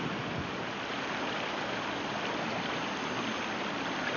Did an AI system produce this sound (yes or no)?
no